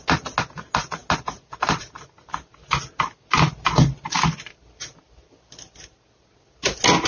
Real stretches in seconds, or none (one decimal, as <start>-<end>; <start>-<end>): 0.0-7.1